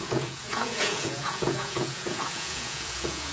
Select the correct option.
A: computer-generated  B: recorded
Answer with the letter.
A